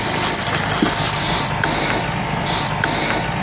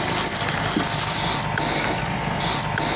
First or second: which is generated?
second